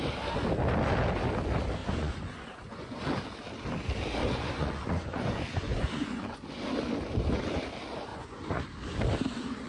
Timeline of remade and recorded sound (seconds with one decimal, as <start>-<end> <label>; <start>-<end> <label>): 0.0-1.8 recorded; 1.8-3.0 remade; 3.0-4.2 recorded; 4.2-6.5 remade; 6.5-8.1 recorded; 8.1-8.6 remade; 8.6-9.7 recorded